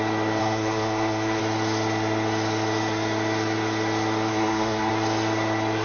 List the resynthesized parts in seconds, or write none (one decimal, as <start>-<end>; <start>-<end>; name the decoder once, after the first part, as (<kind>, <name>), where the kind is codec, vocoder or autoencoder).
0.4-1.4 (codec, SNAC); 4.3-4.9